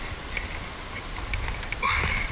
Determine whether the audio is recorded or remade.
recorded